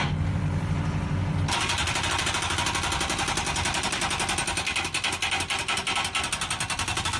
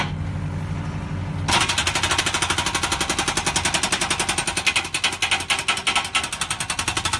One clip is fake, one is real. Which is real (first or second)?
second